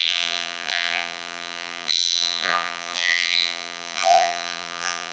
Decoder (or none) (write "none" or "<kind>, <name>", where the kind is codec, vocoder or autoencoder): vocoder, BigVGAN v2